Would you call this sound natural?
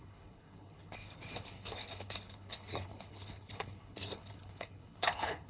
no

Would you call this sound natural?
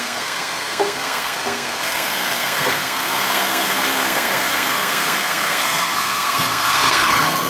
no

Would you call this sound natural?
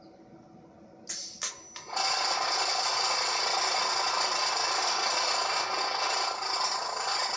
yes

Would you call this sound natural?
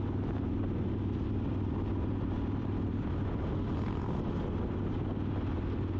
yes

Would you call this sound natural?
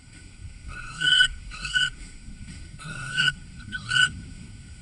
no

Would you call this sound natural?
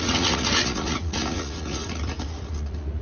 no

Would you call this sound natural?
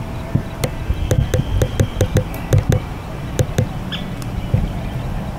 yes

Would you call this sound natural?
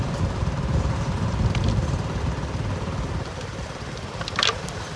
no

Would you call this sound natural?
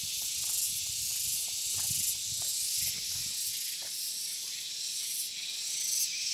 yes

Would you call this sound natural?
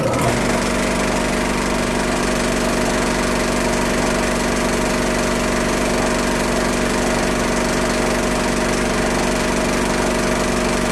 yes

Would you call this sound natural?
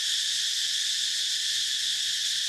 yes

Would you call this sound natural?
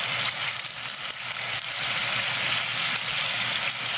yes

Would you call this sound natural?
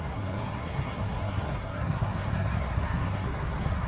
no